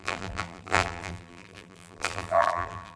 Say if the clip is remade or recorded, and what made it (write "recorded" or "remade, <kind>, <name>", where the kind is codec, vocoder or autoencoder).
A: remade, vocoder, BigVGAN v2